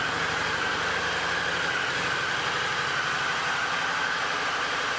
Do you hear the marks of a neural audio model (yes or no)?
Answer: no